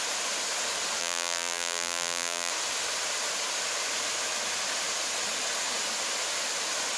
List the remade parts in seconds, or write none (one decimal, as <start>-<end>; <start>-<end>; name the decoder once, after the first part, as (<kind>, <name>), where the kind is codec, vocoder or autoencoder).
1.0-2.5 (vocoder, BigVGAN v2)

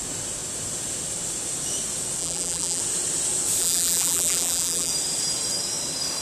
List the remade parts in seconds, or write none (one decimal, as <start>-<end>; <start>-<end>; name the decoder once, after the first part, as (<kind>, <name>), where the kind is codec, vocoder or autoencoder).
2.2-2.8 (vocoder, BigVGAN v2); 3.6-4.9

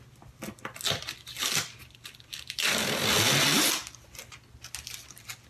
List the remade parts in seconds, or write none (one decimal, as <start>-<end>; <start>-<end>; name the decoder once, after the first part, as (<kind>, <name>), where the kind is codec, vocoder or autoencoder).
1.8-4.1 (vocoder, BigVGAN v2)

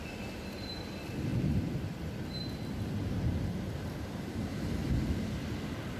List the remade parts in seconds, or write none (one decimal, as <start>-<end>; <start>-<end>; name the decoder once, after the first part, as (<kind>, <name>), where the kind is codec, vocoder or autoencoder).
1.3-2.1 (vocoder, BigVGAN v2)

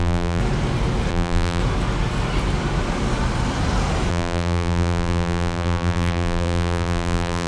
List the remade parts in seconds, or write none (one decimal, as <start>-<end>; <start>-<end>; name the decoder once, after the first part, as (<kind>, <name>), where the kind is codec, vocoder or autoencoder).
0.0-0.4 (vocoder, BigVGAN v2); 1.1-1.6; 4.1-7.5

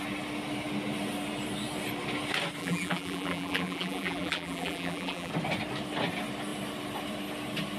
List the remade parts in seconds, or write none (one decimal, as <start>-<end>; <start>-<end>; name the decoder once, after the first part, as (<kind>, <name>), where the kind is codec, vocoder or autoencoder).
2.6-5.3 (vocoder, BigVGAN v2)

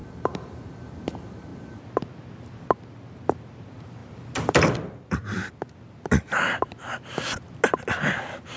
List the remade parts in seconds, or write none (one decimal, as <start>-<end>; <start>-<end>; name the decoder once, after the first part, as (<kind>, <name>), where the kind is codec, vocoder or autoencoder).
0.0-0.6 (vocoder, BigVGAN v2); 4.0-5.5

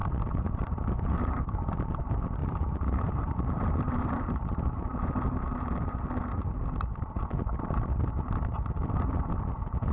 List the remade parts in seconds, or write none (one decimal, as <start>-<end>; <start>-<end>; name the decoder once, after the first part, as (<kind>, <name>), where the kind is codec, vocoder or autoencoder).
0.0-2.0 (vocoder, BigVGAN v2); 2.4-5.1